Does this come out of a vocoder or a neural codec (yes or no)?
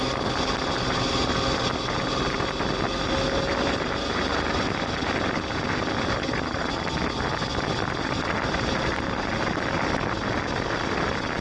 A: no